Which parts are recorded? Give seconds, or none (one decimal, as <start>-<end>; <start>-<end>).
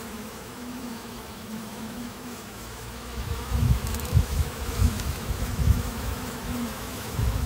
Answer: none